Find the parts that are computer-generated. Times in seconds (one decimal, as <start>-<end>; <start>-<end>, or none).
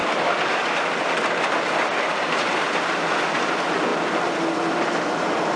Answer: 0.0-1.1